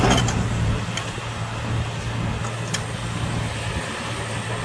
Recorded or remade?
recorded